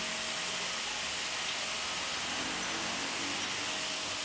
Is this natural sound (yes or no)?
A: yes